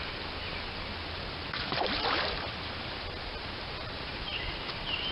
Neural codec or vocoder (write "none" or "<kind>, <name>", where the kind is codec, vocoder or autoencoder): none